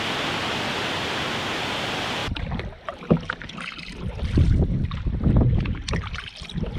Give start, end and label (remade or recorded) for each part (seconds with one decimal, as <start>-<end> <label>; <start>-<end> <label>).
0.0-6.8 recorded